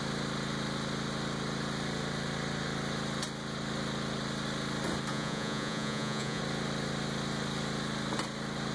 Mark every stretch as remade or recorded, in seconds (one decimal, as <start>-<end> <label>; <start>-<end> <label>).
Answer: 0.0-5.1 recorded; 5.1-6.4 remade; 6.4-8.7 recorded